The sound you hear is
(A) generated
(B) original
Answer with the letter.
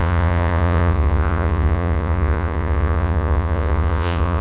A